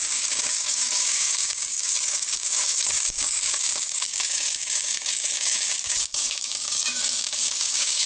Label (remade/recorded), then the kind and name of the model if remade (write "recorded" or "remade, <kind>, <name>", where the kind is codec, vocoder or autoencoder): remade, codec, DAC